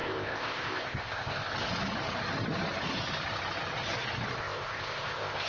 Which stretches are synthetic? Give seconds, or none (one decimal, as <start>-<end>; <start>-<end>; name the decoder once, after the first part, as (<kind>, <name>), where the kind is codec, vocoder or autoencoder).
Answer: 0.0-1.5 (codec, ZipCodec); 4.4-5.5